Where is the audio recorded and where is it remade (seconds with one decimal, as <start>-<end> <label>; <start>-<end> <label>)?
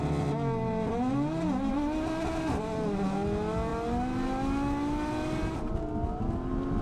0.0-6.8 recorded